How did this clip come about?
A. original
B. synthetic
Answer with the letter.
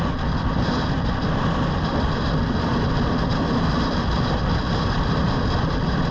A